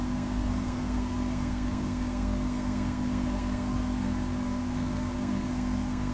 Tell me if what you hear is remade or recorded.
remade